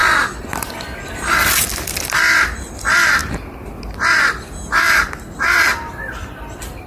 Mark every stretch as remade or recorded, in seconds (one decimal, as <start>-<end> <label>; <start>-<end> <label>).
0.0-0.5 recorded; 0.5-3.2 remade; 3.2-5.9 recorded; 5.9-6.9 remade